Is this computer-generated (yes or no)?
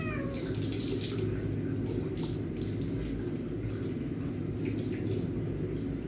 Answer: no